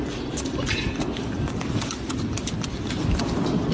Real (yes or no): yes